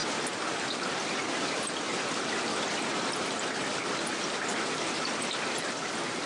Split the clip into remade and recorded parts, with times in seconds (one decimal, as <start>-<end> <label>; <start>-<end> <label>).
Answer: 0.0-6.3 recorded

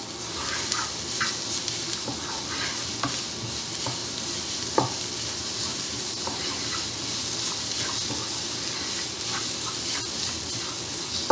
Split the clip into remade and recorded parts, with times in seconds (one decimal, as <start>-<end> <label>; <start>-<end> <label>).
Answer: 0.0-4.0 recorded; 4.0-4.5 remade; 4.5-5.7 recorded; 5.7-7.2 remade; 7.2-11.3 recorded

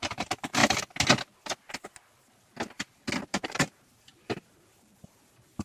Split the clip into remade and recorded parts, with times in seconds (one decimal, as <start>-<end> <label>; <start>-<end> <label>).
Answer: 0.0-0.6 remade; 0.6-3.2 recorded; 3.2-5.6 remade

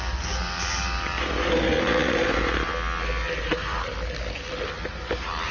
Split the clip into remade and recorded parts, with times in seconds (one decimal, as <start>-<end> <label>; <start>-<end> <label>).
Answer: 0.0-2.7 remade; 2.7-3.5 recorded; 3.5-3.9 remade; 3.9-4.9 recorded; 4.9-5.5 remade